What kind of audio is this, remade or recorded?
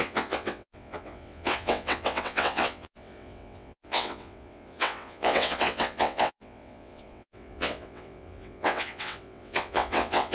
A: remade